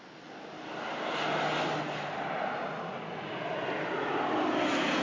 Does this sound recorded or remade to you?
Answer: recorded